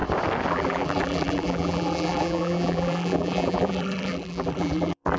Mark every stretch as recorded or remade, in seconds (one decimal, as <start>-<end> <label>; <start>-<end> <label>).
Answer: 0.0-0.5 recorded; 0.5-5.2 remade